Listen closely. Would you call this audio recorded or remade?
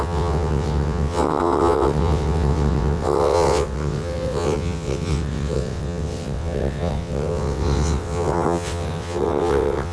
remade